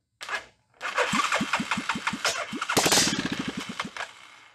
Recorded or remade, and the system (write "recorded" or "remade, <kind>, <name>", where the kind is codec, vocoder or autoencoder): recorded